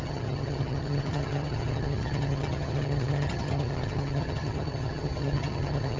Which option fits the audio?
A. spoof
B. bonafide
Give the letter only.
A